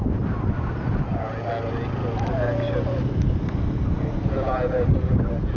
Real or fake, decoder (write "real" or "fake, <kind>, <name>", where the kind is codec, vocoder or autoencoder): real